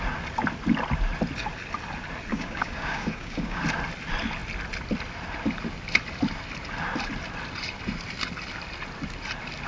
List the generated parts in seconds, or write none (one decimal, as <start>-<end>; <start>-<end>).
2.3-3.6